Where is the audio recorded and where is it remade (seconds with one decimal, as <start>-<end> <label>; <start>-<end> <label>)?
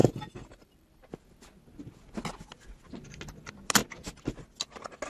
0.0-1.1 remade; 1.1-5.1 recorded